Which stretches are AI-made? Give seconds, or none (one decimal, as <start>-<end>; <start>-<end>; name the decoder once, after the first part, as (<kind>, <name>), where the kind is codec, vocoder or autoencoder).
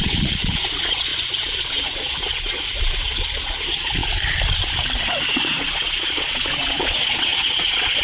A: 0.0-4.0 (vocoder, Vocos); 5.0-8.0